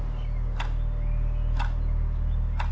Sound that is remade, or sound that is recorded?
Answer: recorded